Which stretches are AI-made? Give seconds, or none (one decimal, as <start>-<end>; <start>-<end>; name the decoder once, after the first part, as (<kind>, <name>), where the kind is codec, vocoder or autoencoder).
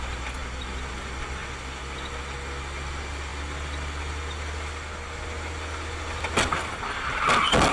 none